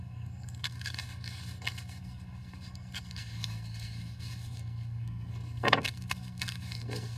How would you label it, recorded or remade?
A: remade